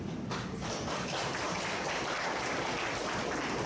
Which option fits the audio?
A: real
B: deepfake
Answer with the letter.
B